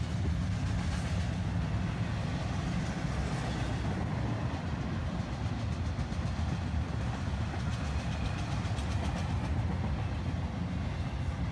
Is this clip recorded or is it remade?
recorded